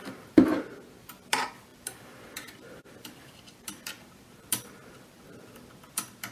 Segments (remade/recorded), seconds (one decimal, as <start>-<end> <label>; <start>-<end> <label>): 0.0-0.5 remade; 0.5-1.0 recorded; 1.0-6.3 remade